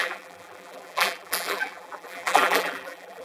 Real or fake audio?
fake